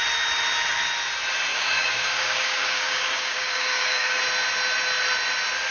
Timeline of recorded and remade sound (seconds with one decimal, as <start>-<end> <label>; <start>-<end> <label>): 0.0-1.5 recorded; 1.5-4.2 remade; 4.2-5.7 recorded

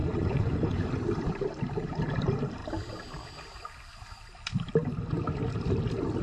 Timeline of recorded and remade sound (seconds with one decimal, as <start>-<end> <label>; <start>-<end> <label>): 0.0-0.9 remade; 0.9-6.2 recorded

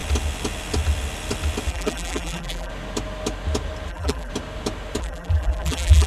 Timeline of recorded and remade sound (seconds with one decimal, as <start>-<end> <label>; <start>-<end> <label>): 0.0-1.7 recorded; 1.7-2.7 remade; 2.7-3.9 recorded; 3.9-4.3 remade; 4.3-5.0 recorded; 5.0-6.1 remade

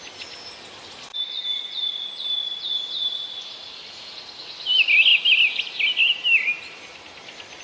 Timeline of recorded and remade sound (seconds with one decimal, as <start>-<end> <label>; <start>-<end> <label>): 0.0-7.6 recorded

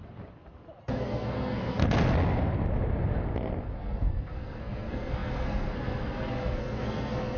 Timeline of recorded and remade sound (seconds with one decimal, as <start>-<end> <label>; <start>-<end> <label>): 0.0-0.8 recorded; 0.8-1.8 remade; 1.8-3.8 recorded; 3.8-7.4 remade

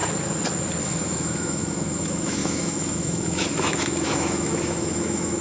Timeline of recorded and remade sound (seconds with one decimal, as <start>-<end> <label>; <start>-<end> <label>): 0.0-0.8 recorded; 0.8-5.4 remade

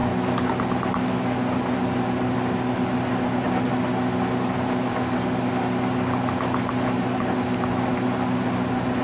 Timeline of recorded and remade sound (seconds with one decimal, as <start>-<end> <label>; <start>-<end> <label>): 0.0-9.0 recorded

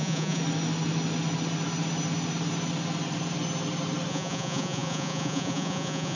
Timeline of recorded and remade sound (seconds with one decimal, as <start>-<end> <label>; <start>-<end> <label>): 0.0-0.4 remade; 0.4-4.1 recorded; 4.1-6.2 remade